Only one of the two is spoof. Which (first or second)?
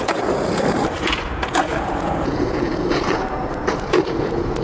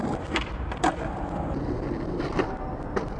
first